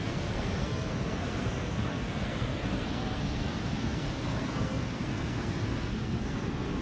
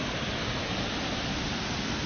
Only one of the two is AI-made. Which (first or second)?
first